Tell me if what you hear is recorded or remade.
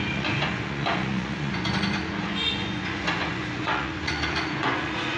remade